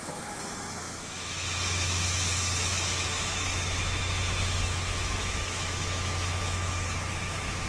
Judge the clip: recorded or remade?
remade